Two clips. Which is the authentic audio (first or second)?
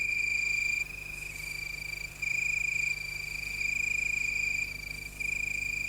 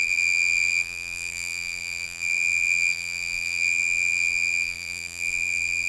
first